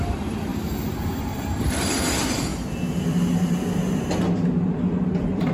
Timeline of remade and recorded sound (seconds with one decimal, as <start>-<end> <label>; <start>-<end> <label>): 0.0-0.5 remade; 0.5-1.2 recorded; 1.2-2.5 remade; 2.5-5.1 recorded; 5.1-5.5 remade